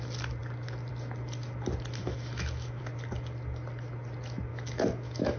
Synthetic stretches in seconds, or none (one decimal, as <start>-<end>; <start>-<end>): 2.0-2.8; 4.5-5.4